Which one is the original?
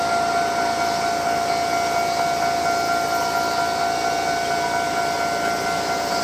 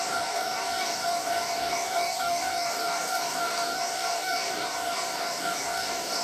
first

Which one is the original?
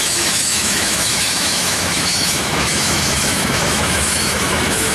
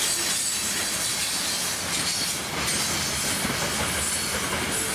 second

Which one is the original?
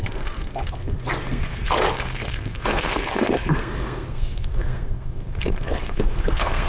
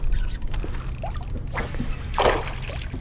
second